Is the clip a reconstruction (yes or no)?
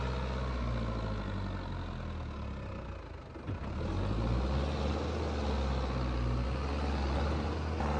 no